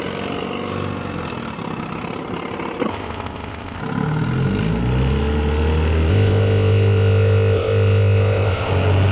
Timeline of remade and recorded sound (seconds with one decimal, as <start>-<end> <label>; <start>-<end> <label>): 0.0-2.9 recorded; 2.9-3.8 remade; 3.8-6.1 recorded; 6.1-8.7 remade; 8.7-9.1 recorded

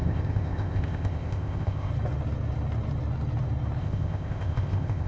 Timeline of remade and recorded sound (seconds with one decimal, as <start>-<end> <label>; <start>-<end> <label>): 0.0-1.9 remade; 1.9-3.8 recorded; 3.8-5.1 remade

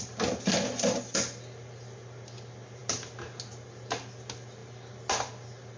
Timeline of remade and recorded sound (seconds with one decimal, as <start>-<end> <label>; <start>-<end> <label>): 0.0-5.8 recorded

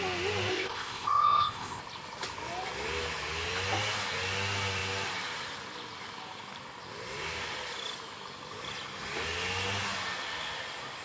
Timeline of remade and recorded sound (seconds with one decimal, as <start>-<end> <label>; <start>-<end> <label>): 0.0-0.5 recorded; 0.5-1.8 remade; 1.8-11.0 recorded

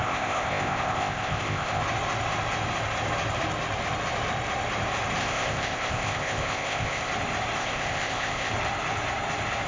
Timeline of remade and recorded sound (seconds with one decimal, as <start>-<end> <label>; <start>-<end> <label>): 0.0-1.8 remade; 1.8-5.2 recorded; 5.2-7.1 remade; 7.1-7.6 recorded; 7.6-8.5 remade; 8.5-9.7 recorded

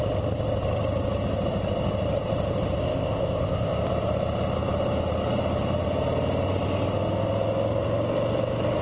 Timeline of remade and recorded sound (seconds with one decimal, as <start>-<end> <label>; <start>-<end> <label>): 0.0-2.8 recorded; 2.8-3.7 remade; 3.7-8.8 recorded

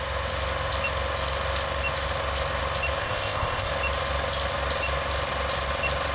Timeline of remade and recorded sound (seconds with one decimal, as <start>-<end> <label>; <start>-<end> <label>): 0.0-3.0 recorded; 3.0-3.7 remade; 3.7-6.1 recorded